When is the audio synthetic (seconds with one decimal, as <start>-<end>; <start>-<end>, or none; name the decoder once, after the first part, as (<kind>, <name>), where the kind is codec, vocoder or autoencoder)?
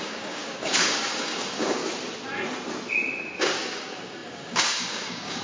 0.0-1.8 (codec, DAC); 3.4-5.4